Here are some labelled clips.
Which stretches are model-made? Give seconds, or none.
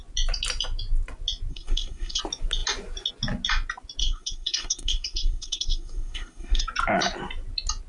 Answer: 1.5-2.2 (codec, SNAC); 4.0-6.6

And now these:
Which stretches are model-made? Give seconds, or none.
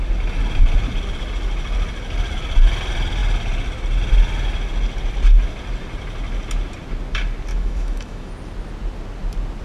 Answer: 7.5-8.3 (autoencoder, DAC-VAE)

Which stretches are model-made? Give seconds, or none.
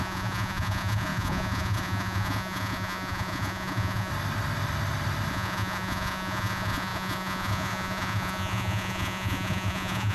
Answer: 0.0-4.1 (vocoder, Vocos); 5.3-10.1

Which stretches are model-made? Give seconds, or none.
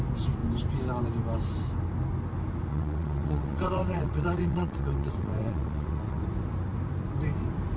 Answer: 2.7-6.2 (vocoder, WaveNeXt)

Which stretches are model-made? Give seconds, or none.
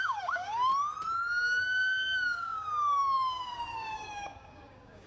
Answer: 0.0-0.7 (codec, DAC); 1.6-5.1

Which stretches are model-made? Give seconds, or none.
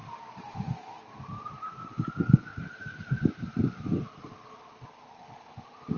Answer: 0.0-2.1 (vocoder, BigVGAN v2); 2.5-4.2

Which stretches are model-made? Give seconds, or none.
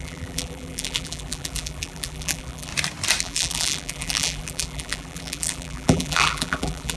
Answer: 0.0-2.7 (vocoder, BigVGAN v2); 3.2-7.0